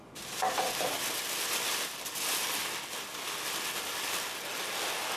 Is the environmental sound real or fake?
real